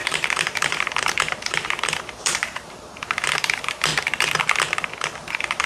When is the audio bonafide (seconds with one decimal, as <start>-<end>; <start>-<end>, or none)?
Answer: 3.9-5.3